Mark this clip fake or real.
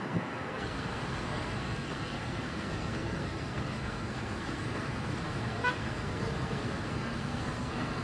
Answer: fake